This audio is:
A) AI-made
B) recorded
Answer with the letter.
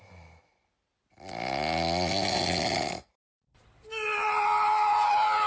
B